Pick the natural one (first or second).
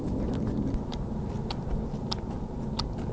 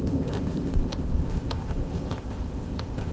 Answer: first